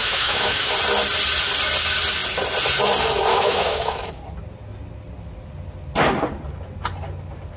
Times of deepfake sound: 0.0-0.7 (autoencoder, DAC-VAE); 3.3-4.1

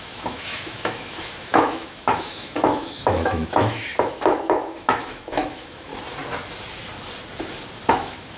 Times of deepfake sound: 0.0-5.9 (autoencoder, DAC-VAE); 7.9-8.4

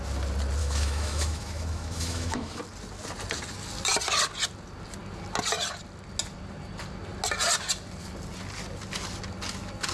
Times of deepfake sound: 0.6-2.6 (autoencoder, DAC-VAE)

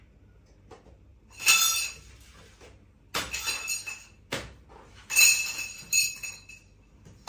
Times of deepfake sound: none